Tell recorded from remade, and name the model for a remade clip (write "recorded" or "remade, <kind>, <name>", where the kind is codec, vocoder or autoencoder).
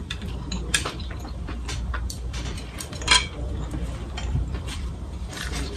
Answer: remade, vocoder, BigVGAN v2